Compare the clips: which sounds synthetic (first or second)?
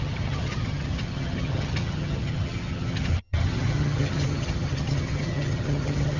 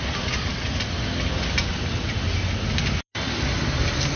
first